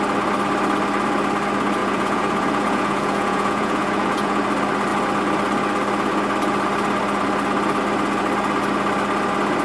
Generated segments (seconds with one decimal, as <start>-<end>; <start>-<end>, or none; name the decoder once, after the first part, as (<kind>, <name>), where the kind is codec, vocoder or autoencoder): 1.8-4.4 (vocoder, Vocos)